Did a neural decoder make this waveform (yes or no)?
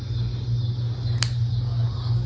no